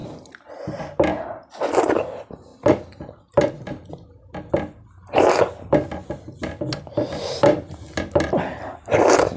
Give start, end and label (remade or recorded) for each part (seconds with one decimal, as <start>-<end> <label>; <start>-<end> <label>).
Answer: 0.0-0.8 remade; 0.8-9.4 recorded

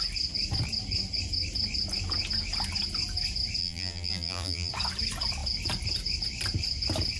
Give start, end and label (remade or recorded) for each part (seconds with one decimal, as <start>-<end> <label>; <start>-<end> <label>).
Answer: 0.0-3.6 recorded; 3.6-4.7 remade; 4.7-7.2 recorded

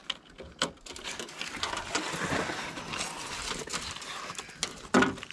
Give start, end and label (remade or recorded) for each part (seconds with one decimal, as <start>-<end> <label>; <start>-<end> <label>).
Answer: 0.0-5.3 recorded

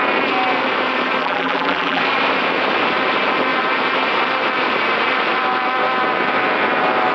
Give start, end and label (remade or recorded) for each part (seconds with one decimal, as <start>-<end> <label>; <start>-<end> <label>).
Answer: 0.0-1.2 recorded; 1.2-2.0 remade; 2.0-7.1 recorded

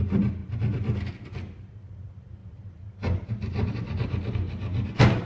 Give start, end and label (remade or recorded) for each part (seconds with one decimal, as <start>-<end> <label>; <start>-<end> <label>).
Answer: 0.0-5.3 recorded

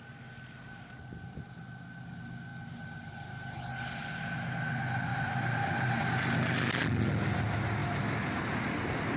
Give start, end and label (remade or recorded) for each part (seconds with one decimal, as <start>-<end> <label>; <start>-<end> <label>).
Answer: 0.0-5.1 recorded; 5.1-5.9 remade; 5.9-9.2 recorded

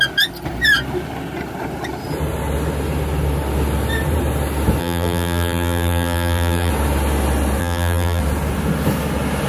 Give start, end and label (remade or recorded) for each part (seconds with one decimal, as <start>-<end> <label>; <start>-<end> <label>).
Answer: 0.0-4.8 recorded; 4.8-6.7 remade; 6.7-7.6 recorded; 7.6-8.2 remade; 8.2-9.5 recorded

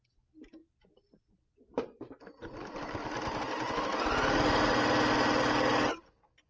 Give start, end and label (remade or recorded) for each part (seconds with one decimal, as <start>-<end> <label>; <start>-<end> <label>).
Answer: 0.0-0.6 recorded; 0.6-3.4 remade; 3.4-6.5 recorded